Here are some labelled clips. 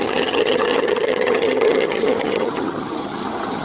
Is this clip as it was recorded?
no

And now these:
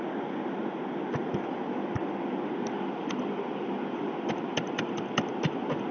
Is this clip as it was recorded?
yes